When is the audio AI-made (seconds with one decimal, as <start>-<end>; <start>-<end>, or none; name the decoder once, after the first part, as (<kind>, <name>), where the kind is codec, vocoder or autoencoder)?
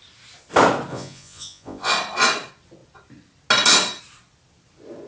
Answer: 0.9-1.9 (vocoder, Vocos)